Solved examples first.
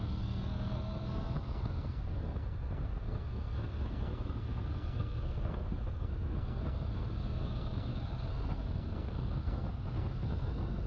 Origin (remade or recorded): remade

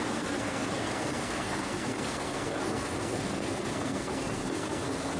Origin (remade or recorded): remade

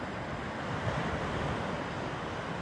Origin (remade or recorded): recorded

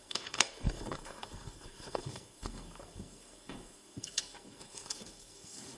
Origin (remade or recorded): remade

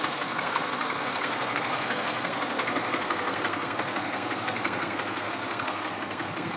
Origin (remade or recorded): remade